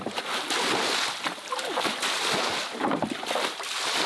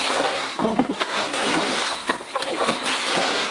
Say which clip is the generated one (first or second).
second